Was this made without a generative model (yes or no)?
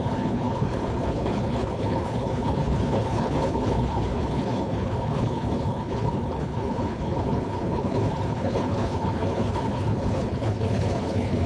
no